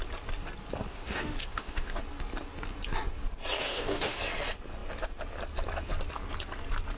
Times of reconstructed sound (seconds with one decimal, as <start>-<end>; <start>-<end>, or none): 0.9-2.0; 3.6-4.2